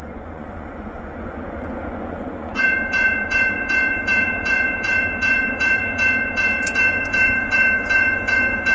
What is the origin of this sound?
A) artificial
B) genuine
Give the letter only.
A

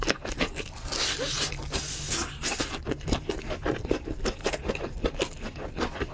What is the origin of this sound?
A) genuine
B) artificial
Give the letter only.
A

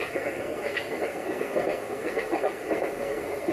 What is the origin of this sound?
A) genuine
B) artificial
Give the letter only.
B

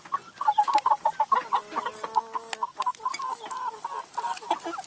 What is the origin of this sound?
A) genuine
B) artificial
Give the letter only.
A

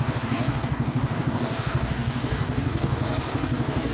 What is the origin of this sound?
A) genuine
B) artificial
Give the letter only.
B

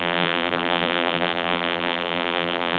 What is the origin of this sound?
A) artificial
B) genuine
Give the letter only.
A